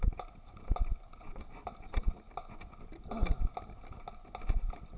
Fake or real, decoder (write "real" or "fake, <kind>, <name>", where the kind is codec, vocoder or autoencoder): real